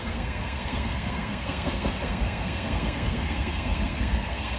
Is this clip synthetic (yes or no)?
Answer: yes